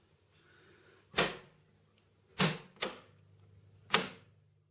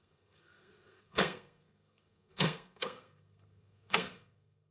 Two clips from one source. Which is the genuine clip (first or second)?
first